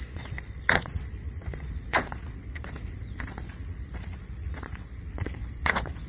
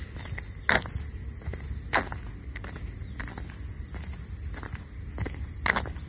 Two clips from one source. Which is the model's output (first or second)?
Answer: first